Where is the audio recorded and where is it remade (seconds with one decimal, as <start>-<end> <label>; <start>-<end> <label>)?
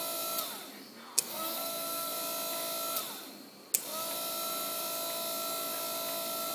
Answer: 0.0-1.1 recorded; 1.1-2.1 remade; 2.1-6.5 recorded